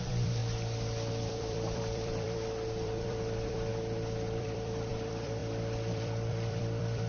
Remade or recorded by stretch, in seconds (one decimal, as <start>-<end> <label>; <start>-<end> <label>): 0.0-0.4 remade; 0.4-1.1 recorded; 1.1-7.1 remade